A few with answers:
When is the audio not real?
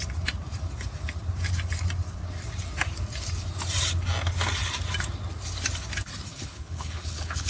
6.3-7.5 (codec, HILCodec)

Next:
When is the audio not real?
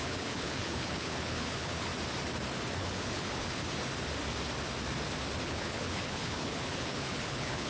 0.0-1.9 (codec, HILCodec); 2.8-3.6; 5.4-7.7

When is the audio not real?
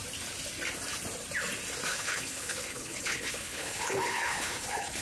1.9-5.0 (codec, HILCodec)